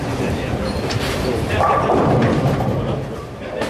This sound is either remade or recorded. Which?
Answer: remade